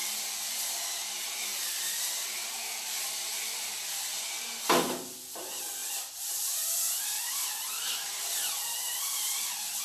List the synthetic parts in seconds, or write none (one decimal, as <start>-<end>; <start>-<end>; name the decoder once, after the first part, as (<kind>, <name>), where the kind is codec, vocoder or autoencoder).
5.8-6.6 (vocoder, BigVGAN v2)